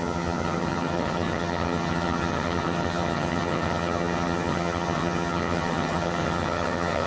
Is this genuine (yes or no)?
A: no